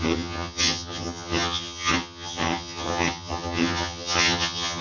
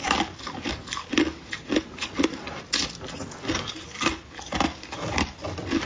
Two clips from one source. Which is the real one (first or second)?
second